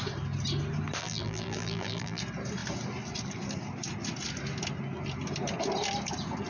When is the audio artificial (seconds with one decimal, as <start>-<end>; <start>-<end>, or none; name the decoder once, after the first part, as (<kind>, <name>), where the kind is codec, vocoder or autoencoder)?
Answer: 1.0-2.2 (vocoder, BigVGAN v2)